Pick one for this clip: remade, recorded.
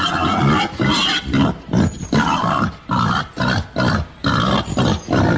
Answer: recorded